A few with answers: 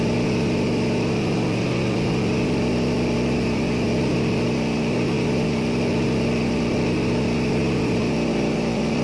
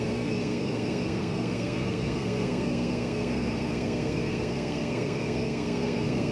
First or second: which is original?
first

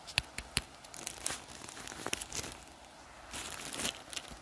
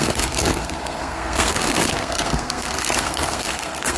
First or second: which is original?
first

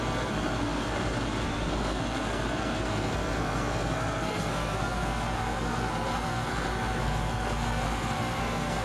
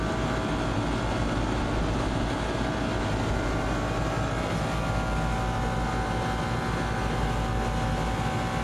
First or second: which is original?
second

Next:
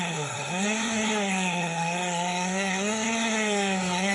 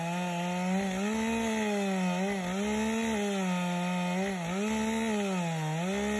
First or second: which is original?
second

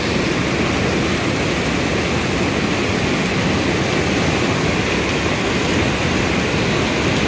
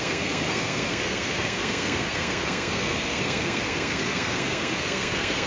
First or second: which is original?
first